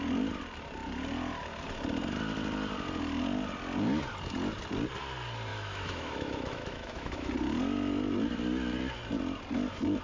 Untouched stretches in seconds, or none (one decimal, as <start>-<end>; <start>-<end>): 0.0-5.5; 7.3-10.0